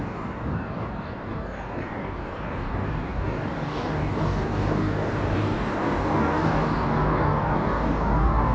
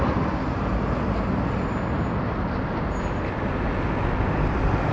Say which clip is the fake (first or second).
first